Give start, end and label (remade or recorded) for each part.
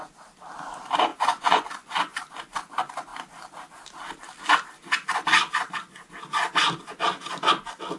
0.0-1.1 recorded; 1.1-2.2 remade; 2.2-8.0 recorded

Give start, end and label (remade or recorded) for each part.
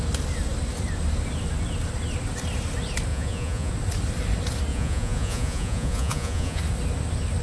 0.0-3.1 recorded; 3.1-3.7 remade; 3.7-4.7 recorded; 4.7-6.6 remade; 6.6-7.4 recorded